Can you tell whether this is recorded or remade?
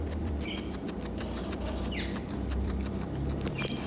remade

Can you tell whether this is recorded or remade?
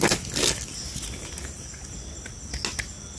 recorded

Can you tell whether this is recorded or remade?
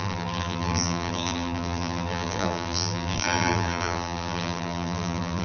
remade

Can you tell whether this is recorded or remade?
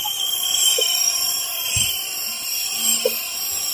recorded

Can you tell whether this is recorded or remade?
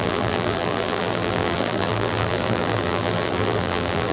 remade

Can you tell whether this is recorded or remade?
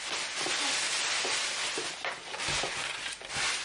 recorded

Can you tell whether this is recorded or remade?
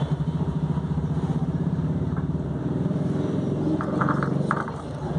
remade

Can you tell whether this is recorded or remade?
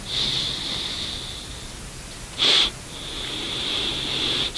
recorded